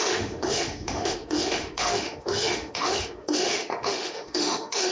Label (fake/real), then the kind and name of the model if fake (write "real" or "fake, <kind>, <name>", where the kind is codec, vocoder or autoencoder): fake, autoencoder, DAC-VAE